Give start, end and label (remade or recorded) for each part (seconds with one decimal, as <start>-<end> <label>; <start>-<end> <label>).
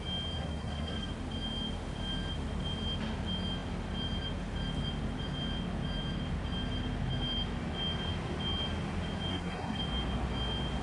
0.0-0.4 recorded; 0.4-1.1 remade; 1.1-9.3 recorded; 9.3-9.8 remade; 9.8-10.8 recorded